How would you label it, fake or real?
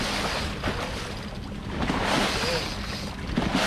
real